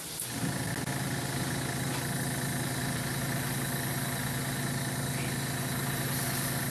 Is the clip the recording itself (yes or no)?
yes